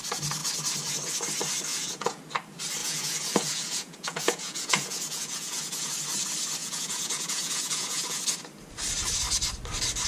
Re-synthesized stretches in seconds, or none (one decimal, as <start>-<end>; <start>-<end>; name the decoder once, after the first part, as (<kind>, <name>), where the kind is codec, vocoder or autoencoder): 1.7-2.2 (vocoder, Vocos); 2.8-5.9; 6.6-8.2